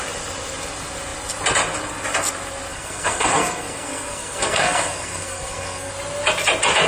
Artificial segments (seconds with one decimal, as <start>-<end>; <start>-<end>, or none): 2.7-5.9